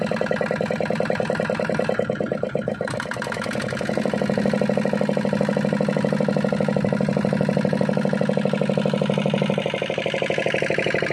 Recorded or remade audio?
recorded